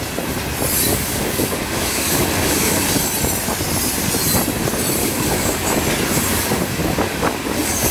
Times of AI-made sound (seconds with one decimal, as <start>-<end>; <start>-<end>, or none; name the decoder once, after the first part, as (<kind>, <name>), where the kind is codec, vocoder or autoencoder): 0.9-2.9 (codec, DAC); 5.0-5.6; 6.3-7.9